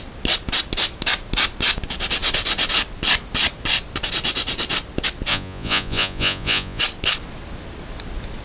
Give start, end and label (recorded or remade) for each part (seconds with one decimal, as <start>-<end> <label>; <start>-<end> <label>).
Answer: 0.0-5.3 recorded; 5.3-6.8 remade; 6.8-8.4 recorded